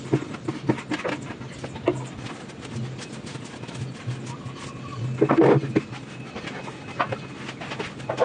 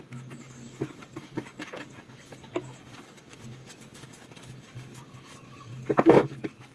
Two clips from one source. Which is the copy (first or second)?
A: second